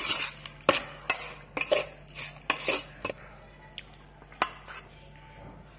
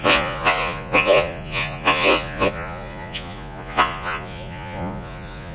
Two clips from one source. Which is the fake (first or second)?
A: second